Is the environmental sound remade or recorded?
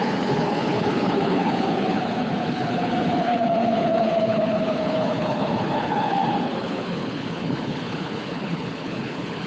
remade